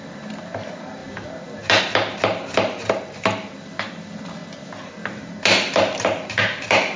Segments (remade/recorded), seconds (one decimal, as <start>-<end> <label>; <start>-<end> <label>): 0.0-7.0 recorded